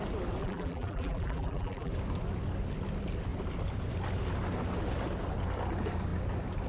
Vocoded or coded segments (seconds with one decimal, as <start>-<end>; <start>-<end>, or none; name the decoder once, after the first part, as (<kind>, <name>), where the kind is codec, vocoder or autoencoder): 0.4-1.9 (vocoder, BigVGAN v2)